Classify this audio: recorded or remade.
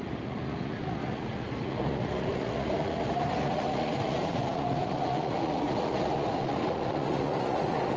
remade